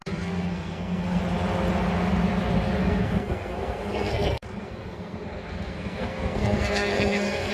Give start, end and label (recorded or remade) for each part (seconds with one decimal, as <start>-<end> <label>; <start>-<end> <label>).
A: 0.0-1.2 remade; 1.2-2.8 recorded; 2.8-7.5 remade